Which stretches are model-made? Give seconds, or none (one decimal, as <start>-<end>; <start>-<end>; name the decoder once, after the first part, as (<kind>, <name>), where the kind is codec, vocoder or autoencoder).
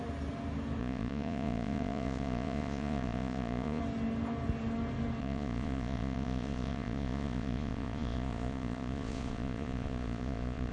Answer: 0.8-3.8 (vocoder, Vocos); 5.2-10.7